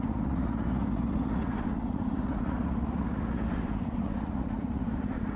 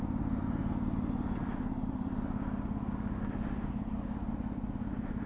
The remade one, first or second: first